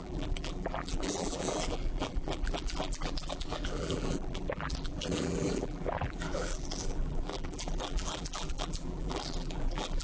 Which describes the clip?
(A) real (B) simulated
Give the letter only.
B